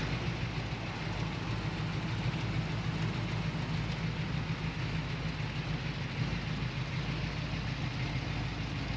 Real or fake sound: real